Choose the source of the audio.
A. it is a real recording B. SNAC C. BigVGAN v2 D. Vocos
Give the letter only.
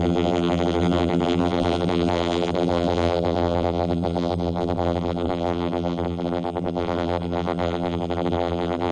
C